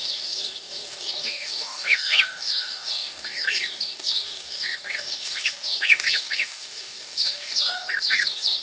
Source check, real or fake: fake